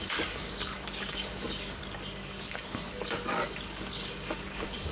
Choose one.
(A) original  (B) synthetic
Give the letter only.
B